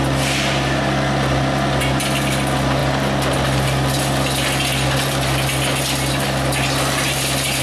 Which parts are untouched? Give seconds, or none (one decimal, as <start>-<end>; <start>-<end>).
0.0-7.6